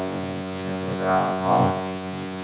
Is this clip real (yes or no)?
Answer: no